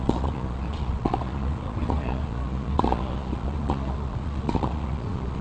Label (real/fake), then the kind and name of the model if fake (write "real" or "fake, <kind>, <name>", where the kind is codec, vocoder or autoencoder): fake, vocoder, Vocos